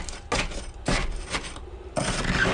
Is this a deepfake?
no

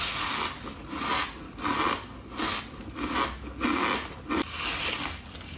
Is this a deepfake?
no